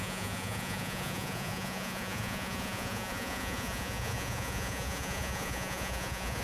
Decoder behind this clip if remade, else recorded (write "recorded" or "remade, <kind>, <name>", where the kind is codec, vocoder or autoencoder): remade, vocoder, Vocos